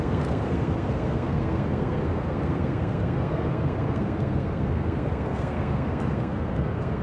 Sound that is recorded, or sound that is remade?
remade